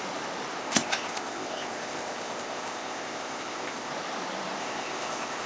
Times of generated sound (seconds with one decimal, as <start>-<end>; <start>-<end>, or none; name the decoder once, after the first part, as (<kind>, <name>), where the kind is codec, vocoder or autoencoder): 0.6-3.9 (codec, ZipCodec); 4.6-5.5